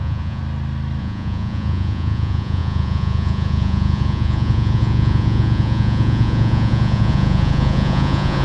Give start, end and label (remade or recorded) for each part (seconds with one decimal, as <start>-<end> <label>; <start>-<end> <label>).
0.0-0.4 remade; 0.4-1.0 recorded; 1.0-8.4 remade